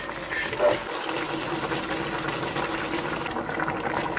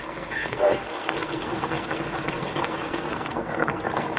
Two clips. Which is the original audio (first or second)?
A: first